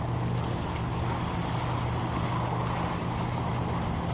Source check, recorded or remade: recorded